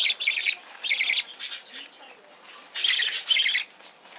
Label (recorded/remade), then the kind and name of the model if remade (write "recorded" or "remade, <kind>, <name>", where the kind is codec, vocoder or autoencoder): recorded